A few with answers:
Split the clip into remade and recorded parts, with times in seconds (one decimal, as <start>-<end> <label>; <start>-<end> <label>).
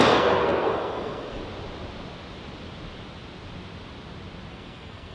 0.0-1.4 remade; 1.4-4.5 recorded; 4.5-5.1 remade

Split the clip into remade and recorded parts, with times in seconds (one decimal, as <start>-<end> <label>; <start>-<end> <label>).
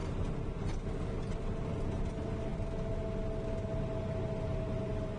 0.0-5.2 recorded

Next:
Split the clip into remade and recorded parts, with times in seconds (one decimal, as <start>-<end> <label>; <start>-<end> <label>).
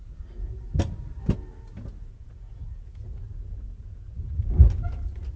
0.0-2.1 recorded; 2.1-4.5 remade; 4.5-5.4 recorded